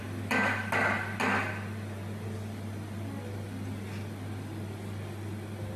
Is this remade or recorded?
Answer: recorded